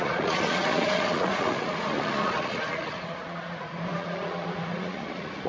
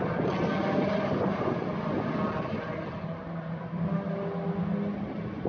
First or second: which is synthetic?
first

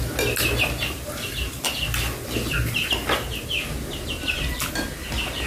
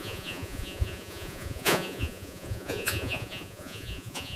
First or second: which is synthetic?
second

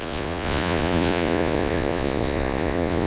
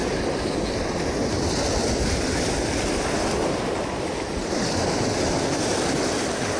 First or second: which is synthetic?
first